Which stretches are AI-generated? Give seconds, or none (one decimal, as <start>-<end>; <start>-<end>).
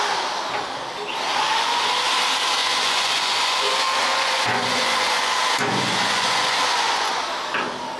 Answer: 1.3-1.9; 2.6-7.2